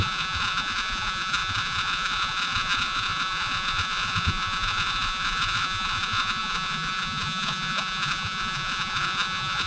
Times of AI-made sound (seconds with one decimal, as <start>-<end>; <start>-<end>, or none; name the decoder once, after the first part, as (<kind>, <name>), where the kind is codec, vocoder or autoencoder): 0.0-9.7 (vocoder, Vocos)